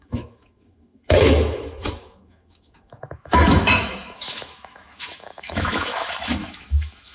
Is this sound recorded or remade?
remade